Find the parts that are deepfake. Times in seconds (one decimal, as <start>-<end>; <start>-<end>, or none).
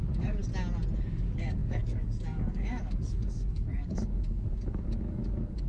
0.0-0.4; 1.1-5.7